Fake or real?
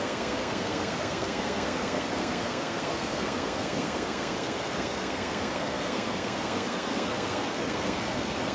fake